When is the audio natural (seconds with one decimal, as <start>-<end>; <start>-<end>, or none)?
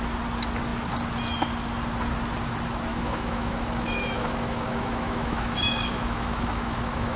0.0-2.9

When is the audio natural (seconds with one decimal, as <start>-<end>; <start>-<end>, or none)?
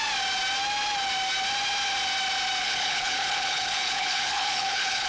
0.0-2.6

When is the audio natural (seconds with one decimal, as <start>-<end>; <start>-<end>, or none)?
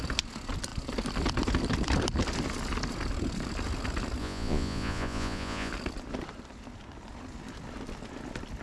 0.0-4.2; 5.7-8.6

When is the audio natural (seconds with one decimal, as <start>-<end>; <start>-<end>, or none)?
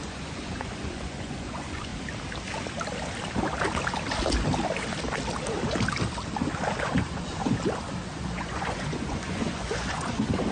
1.9-6.8; 7.4-8.0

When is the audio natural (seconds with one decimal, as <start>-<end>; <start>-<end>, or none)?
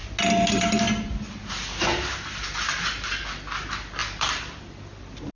0.0-5.3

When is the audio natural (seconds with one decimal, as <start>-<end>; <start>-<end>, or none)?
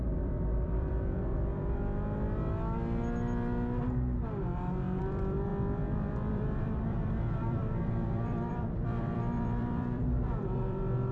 1.3-5.0; 5.5-6.3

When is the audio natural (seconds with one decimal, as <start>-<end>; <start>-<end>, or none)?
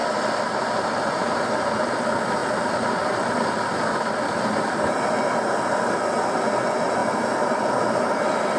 0.0-2.4; 5.2-7.0; 8.1-8.6